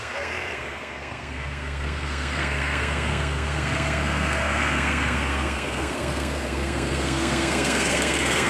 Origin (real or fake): fake